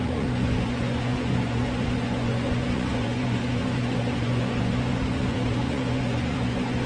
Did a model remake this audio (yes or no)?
yes